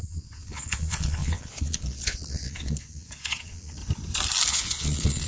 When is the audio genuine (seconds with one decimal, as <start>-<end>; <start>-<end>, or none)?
3.8-4.5